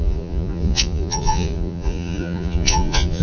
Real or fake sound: fake